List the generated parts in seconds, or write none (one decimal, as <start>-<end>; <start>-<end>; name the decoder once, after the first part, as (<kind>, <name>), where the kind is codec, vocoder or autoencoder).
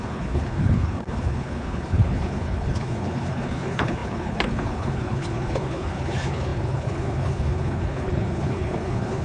0.0-9.2 (codec, HILCodec)